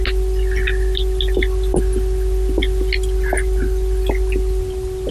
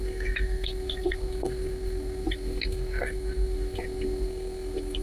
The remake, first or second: second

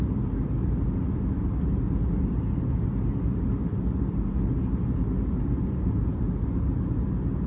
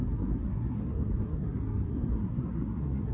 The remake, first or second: second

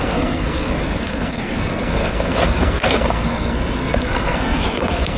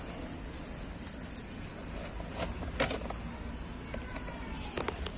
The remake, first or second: first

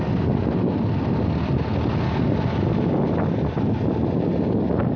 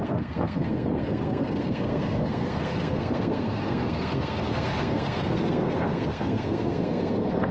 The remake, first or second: second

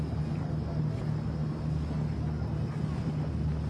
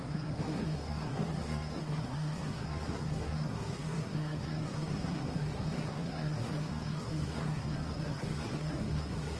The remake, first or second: second